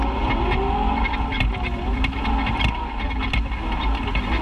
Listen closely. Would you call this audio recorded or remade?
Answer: recorded